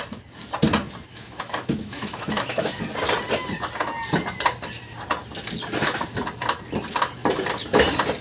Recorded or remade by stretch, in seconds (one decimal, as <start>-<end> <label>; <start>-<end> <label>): 0.0-1.1 recorded; 1.1-2.8 remade; 2.8-8.2 recorded